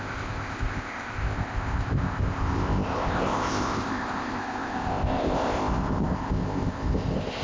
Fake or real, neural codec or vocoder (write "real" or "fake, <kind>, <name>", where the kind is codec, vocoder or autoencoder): fake, codec, ZipCodec